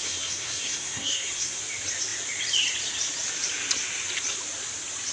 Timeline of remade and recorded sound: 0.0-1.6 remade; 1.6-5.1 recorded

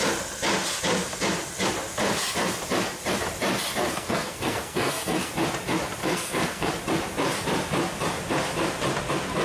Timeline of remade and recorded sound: 0.0-3.8 recorded; 3.8-5.3 remade; 5.3-6.0 recorded; 6.0-6.7 remade; 6.7-9.4 recorded

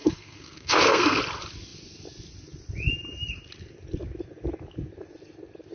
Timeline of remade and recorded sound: 0.0-1.2 remade; 1.2-5.7 recorded

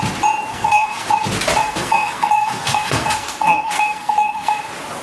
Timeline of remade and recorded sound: 0.0-0.5 recorded; 0.5-1.1 remade; 1.1-1.6 recorded; 1.6-4.6 remade; 4.6-5.0 recorded

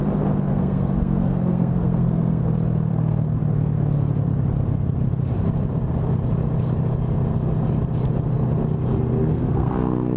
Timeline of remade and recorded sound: 0.0-0.5 recorded; 0.5-2.4 remade; 2.4-2.9 recorded; 2.9-3.4 remade; 3.4-9.3 recorded; 9.3-10.2 remade

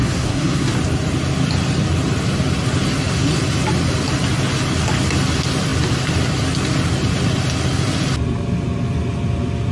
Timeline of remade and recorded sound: 0.0-0.7 remade; 0.7-9.7 recorded

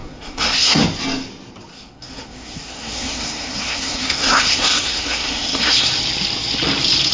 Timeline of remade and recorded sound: 0.0-0.8 remade; 0.8-1.7 recorded; 1.7-5.9 remade; 5.9-7.1 recorded